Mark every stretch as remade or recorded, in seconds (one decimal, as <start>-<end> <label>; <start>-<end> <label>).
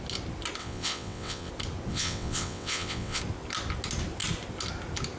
0.0-0.6 recorded; 0.6-1.5 remade; 1.5-1.9 recorded; 1.9-3.2 remade; 3.2-5.2 recorded